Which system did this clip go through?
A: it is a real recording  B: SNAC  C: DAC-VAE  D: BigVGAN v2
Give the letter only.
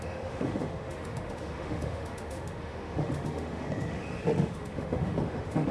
C